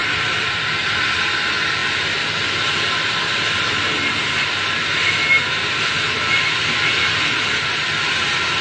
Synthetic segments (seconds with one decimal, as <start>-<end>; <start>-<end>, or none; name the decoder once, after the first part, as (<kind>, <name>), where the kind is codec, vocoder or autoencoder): none

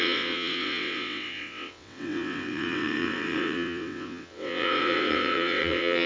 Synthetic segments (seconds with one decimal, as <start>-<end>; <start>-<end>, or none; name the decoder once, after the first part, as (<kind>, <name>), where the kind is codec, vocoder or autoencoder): 0.0-6.1 (vocoder, WaveNeXt)

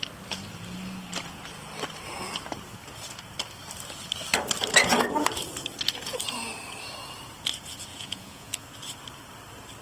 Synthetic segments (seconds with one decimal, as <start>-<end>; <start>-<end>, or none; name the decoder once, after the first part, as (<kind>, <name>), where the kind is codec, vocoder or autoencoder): 7.9-8.7 (vocoder, Vocos)

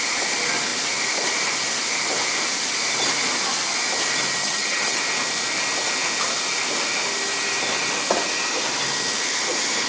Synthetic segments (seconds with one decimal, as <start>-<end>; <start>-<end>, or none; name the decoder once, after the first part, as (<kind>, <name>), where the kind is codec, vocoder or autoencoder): 4.4-5.0 (vocoder, HiFi-GAN)

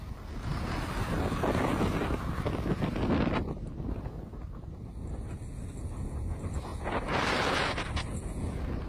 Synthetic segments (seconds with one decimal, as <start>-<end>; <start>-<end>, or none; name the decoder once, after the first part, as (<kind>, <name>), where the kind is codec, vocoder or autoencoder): none